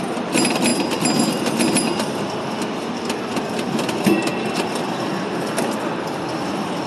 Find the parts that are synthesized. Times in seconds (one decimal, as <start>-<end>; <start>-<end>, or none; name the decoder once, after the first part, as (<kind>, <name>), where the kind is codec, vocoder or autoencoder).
0.0-0.7 (vocoder, BigVGAN v2); 1.4-6.9